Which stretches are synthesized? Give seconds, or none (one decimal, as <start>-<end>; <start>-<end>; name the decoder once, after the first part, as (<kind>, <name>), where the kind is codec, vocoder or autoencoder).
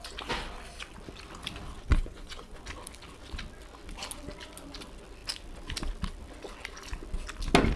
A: 1.9-2.6 (vocoder, Vocos)